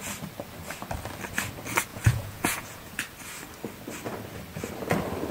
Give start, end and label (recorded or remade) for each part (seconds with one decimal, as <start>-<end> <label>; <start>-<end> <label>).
0.0-1.9 recorded; 1.9-3.0 remade; 3.0-5.3 recorded